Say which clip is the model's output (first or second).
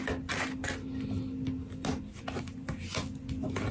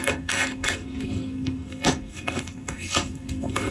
second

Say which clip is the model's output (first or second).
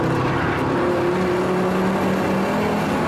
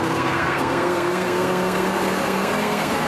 second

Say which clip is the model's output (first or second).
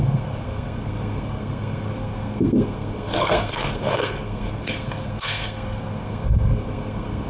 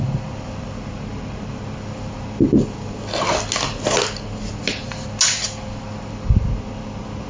first